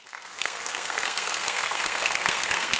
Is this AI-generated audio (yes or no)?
yes